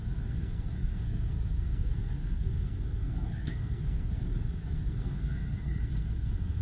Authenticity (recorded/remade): remade